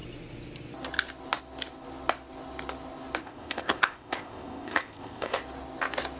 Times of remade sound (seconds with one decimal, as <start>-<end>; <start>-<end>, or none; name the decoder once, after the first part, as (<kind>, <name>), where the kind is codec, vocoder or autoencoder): 3.2-5.4 (codec, ZipCodec)

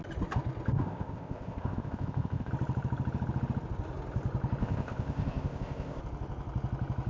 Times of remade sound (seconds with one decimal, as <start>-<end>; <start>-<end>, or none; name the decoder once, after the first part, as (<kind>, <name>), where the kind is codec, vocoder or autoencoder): 0.7-2.5 (codec, ZipCodec); 4.6-6.0

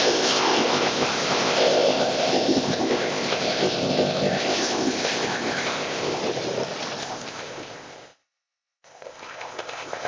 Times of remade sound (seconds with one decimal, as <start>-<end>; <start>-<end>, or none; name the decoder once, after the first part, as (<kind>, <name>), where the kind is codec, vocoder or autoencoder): 0.0-6.2 (codec, ZipCodec); 7.0-10.1